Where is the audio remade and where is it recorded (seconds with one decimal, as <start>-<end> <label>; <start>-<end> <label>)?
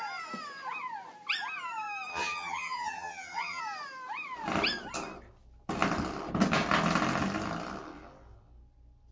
0.0-2.1 recorded; 2.1-3.6 remade; 3.6-9.1 recorded